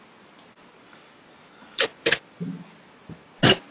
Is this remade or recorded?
recorded